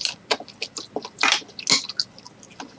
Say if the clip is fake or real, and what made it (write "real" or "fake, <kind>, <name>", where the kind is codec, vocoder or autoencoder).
real